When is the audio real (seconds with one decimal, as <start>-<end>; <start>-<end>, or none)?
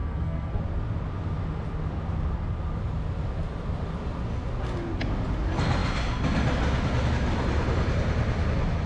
0.6-8.9